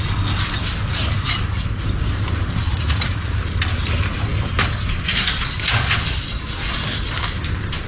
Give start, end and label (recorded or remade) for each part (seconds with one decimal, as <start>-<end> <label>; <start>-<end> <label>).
0.0-2.7 recorded; 2.7-3.3 remade; 3.3-7.9 recorded